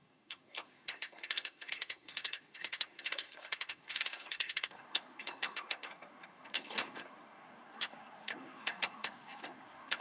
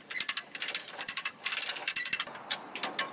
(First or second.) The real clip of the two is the second